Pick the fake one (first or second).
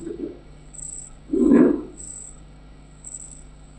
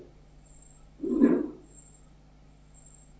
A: first